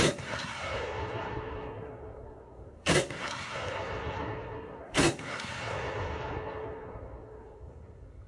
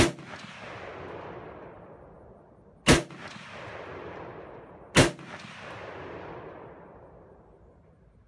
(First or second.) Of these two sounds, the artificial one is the first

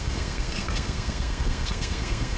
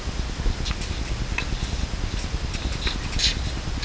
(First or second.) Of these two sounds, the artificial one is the first